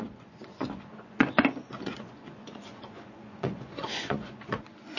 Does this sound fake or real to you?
fake